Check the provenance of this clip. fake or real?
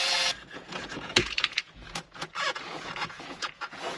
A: fake